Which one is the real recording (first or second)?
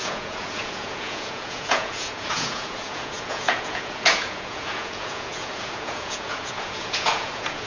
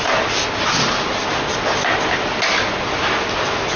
second